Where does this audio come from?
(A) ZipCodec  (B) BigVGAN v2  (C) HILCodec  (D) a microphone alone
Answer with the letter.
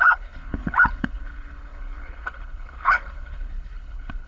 C